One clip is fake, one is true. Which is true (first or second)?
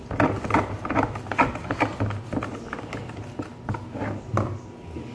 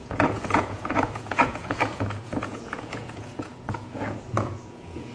first